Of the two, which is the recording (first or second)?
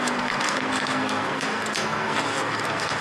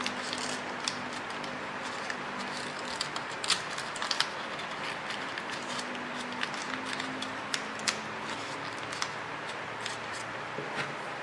second